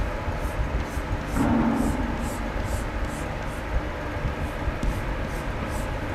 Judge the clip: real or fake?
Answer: real